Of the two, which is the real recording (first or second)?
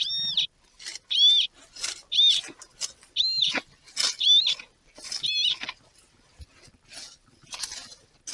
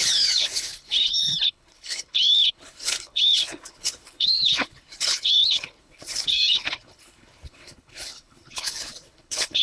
first